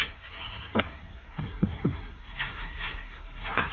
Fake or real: fake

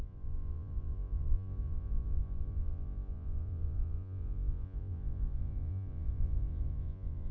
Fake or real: fake